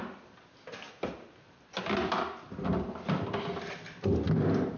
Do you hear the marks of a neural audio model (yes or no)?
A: no